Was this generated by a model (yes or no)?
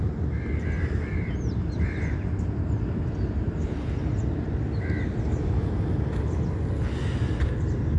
no